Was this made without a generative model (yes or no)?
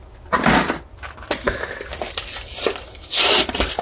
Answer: yes